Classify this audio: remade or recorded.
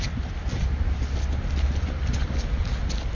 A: recorded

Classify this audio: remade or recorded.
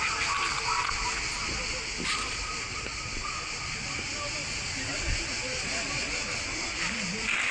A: recorded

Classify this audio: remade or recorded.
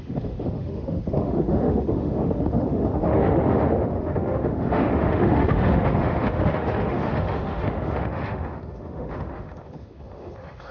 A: remade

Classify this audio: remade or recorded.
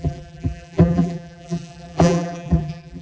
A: remade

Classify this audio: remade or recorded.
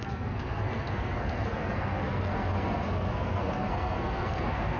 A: remade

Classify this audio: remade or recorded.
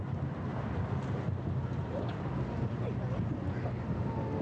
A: recorded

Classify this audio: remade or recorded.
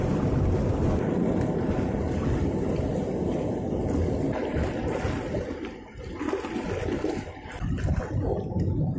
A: recorded